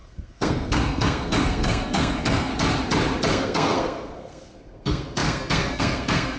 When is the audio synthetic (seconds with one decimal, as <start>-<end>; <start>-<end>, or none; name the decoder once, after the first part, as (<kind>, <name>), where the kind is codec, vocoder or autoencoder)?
0.0-2.5 (codec, SNAC); 3.3-6.4